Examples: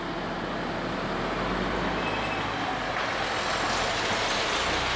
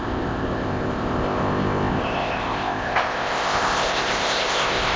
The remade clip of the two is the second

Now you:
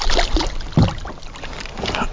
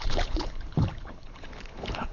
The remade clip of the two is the second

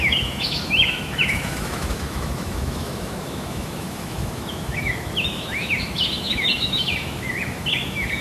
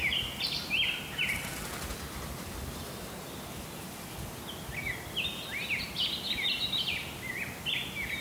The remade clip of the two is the first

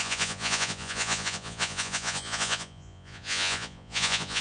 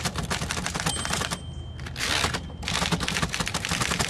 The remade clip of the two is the first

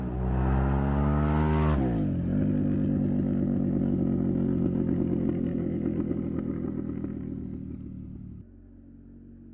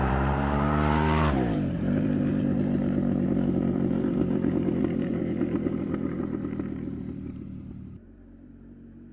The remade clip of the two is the second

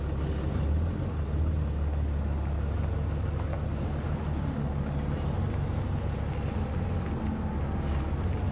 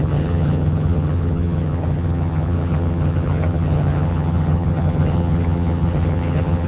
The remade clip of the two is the second